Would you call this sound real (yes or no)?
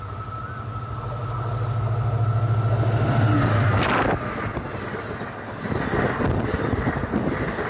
yes